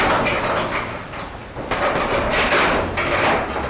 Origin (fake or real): real